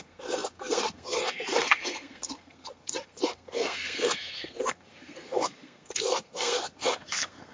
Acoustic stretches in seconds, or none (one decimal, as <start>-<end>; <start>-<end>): none